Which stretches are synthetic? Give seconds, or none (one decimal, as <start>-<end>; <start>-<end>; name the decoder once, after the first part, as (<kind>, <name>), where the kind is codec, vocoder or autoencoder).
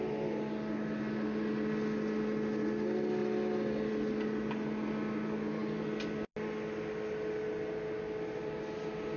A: none